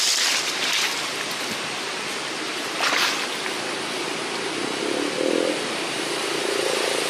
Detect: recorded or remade recorded